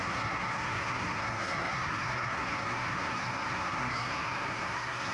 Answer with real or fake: fake